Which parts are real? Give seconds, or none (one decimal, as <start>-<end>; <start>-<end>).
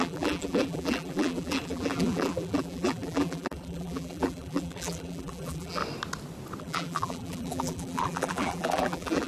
5.8-6.6